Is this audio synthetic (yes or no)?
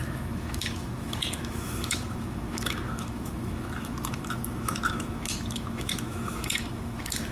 yes